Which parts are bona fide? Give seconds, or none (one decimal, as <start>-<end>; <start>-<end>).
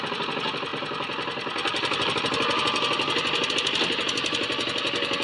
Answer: 0.0-5.2